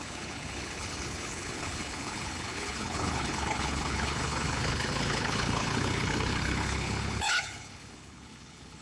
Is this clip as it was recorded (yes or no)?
no